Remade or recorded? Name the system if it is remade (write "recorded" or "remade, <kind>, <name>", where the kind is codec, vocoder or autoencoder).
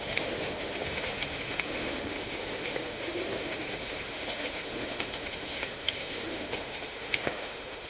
remade, autoencoder, DAC-VAE